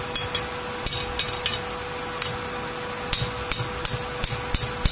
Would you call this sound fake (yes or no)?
no